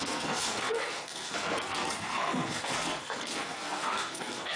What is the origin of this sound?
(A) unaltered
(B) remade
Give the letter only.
B